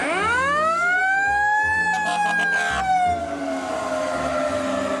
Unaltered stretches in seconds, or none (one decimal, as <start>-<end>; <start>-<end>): 1.0-3.2; 3.7-5.0